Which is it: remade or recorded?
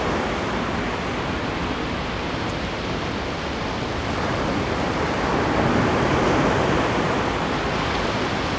recorded